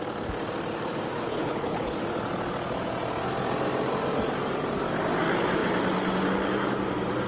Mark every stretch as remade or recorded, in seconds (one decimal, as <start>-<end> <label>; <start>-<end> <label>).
0.0-1.1 recorded; 1.1-2.0 remade; 2.0-7.3 recorded